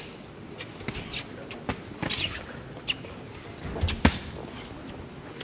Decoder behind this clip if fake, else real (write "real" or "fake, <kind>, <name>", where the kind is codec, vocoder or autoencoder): real